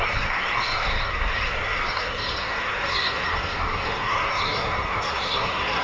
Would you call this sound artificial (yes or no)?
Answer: yes